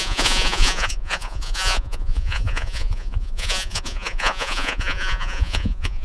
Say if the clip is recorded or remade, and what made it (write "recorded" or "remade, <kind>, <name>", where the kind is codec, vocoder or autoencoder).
remade, vocoder, Vocos